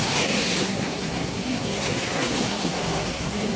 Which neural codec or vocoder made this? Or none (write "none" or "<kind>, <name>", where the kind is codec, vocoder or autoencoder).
codec, SNAC